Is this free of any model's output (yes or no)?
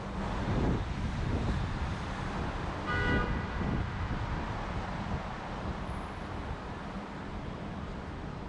no